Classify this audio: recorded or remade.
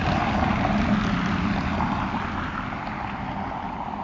recorded